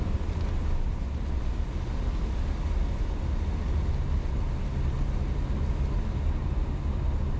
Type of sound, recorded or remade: recorded